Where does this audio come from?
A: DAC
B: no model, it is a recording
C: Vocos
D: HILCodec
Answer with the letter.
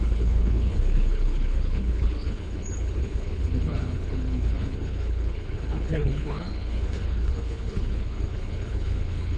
D